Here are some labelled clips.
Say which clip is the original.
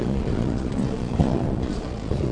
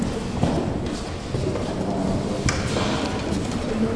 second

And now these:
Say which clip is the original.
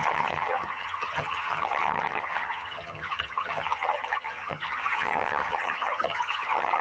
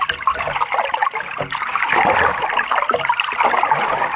second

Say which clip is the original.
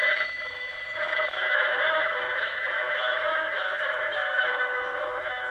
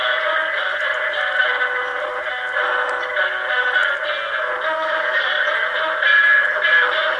second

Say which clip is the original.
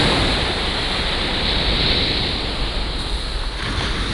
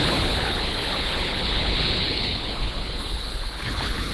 first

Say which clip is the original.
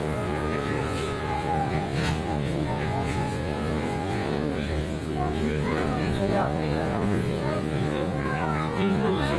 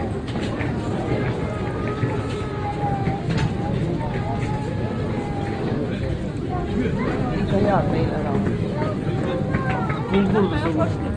second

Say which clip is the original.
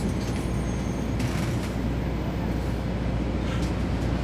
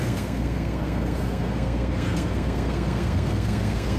first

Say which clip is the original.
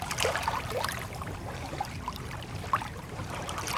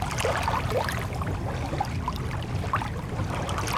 second